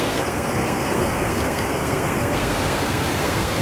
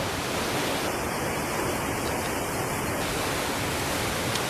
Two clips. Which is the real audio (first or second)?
second